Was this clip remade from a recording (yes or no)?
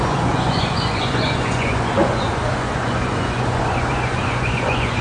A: yes